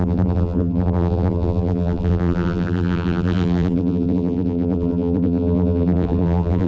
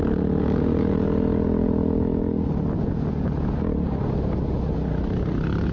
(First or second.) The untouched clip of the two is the second